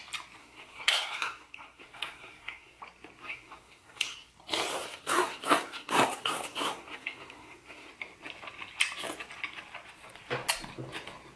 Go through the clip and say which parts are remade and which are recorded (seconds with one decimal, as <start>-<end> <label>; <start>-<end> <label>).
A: 0.0-0.4 recorded; 0.4-2.8 remade; 2.8-3.2 recorded; 3.2-4.3 remade; 4.3-4.7 recorded; 4.7-7.9 remade; 7.9-11.4 recorded